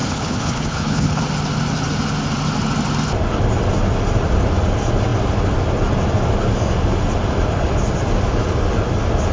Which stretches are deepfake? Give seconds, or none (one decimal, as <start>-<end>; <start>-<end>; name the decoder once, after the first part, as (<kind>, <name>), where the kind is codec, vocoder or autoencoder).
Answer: 0.0-1.2 (codec, HILCodec)